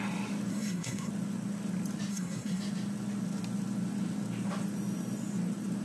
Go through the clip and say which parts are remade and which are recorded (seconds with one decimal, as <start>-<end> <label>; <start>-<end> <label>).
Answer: 0.0-0.5 recorded; 0.5-1.1 remade; 1.1-2.1 recorded; 2.1-2.6 remade; 2.6-5.8 recorded